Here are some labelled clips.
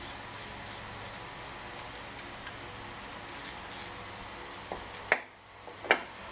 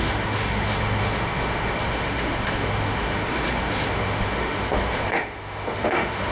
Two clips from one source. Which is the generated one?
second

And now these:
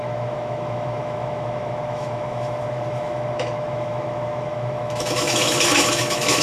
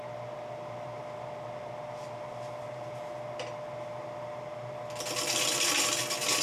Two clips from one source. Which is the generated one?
first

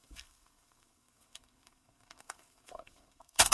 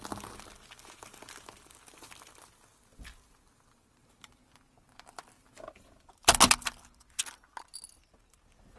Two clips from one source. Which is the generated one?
first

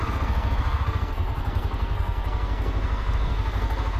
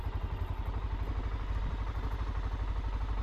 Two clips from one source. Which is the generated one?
first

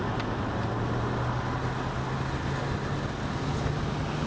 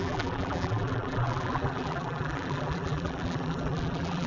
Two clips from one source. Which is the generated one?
second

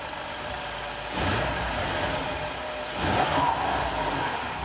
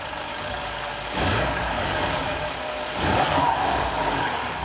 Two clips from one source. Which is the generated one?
second